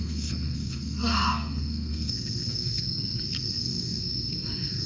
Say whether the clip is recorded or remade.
remade